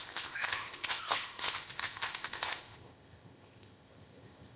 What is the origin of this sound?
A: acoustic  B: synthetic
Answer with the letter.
B